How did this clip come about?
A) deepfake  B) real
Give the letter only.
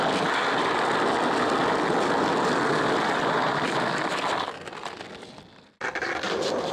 B